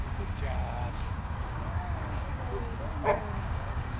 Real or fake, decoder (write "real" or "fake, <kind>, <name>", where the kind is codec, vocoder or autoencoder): fake, codec, DAC